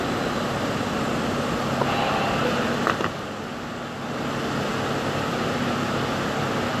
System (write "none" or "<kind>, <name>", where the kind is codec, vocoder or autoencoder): none